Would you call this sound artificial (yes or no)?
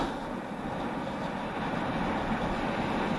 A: no